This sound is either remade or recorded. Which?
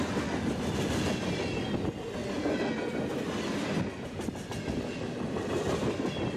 recorded